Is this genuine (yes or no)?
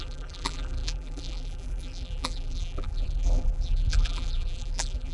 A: no